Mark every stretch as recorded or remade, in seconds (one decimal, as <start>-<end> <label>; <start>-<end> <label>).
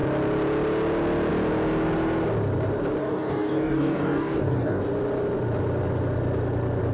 0.0-3.0 recorded; 3.0-4.8 remade; 4.8-6.9 recorded